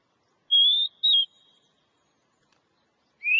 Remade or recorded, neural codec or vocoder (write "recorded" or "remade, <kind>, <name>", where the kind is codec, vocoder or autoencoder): recorded